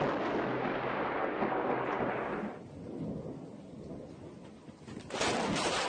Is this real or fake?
real